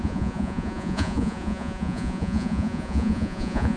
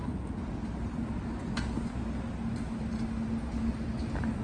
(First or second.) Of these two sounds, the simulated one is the first